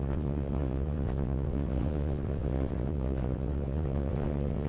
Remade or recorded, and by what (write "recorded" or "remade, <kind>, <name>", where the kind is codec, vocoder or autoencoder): remade, vocoder, WaveNeXt